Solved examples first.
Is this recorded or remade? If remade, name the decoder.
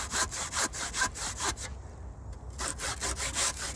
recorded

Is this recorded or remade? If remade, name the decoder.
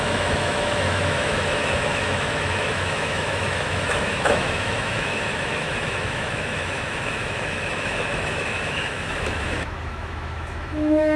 remade, autoencoder, DAC-VAE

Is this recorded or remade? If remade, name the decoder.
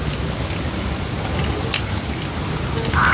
recorded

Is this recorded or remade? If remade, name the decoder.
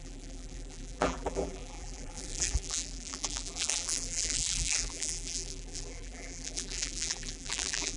remade, vocoder, BigVGAN v2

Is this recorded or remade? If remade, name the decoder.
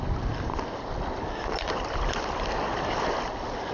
recorded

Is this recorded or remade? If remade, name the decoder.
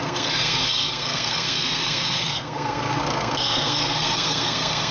remade, codec, SNAC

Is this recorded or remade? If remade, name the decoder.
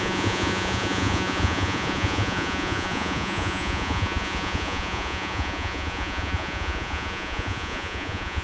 remade, vocoder, Vocos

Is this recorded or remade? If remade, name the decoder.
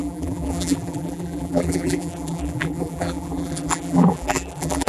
remade, vocoder, BigVGAN v2